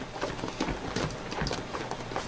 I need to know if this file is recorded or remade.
recorded